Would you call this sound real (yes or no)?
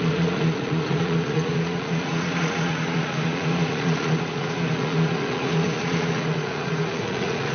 no